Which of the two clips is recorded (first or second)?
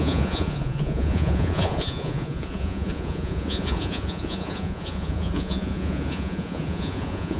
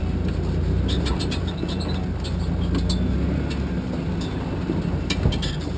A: second